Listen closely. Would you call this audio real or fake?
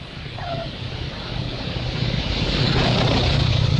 fake